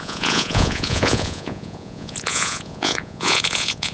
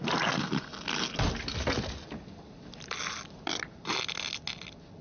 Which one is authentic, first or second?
second